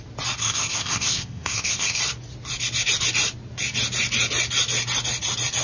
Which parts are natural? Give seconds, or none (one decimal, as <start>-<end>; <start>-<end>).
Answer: 0.0-0.4; 2.0-5.6